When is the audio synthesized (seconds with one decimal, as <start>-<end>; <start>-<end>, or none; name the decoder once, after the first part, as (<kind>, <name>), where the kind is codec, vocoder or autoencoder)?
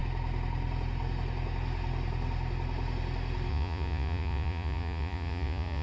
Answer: 3.5-5.8 (vocoder, Vocos)